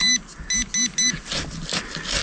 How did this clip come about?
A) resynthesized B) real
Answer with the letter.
B